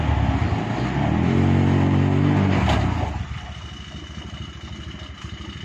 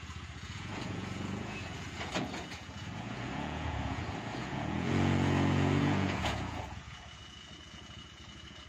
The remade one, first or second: second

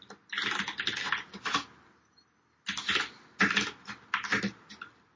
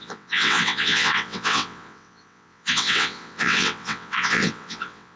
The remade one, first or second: second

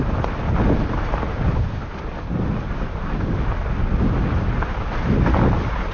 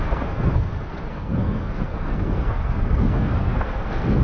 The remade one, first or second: second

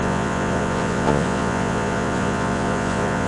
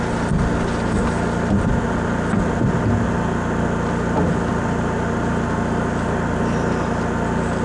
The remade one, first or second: first